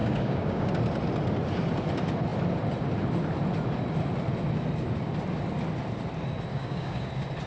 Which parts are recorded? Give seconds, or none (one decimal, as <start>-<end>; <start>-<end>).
0.7-6.5; 7.1-7.5